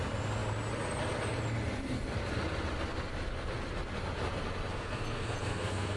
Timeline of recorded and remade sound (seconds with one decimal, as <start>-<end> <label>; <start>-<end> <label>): 0.0-4.7 recorded; 4.7-6.0 remade